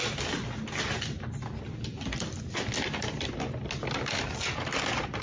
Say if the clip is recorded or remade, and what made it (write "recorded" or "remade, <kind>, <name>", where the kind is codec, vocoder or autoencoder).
recorded